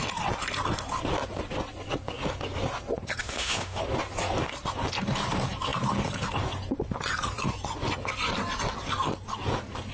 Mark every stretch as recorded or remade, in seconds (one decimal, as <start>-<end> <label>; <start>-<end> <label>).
0.0-3.2 recorded; 3.2-3.8 remade; 3.8-9.9 recorded